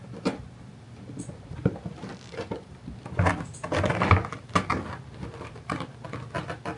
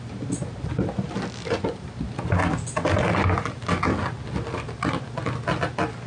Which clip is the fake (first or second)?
first